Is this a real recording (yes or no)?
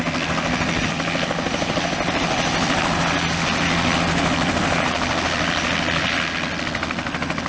yes